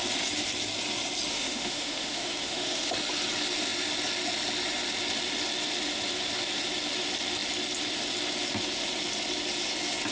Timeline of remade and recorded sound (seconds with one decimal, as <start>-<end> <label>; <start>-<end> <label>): 0.0-1.3 recorded; 1.3-2.9 remade; 2.9-10.1 recorded